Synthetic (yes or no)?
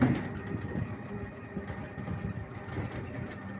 no